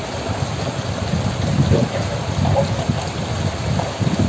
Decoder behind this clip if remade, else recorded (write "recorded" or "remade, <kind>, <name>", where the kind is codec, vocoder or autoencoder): recorded